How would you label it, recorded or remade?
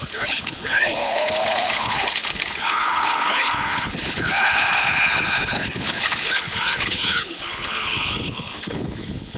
remade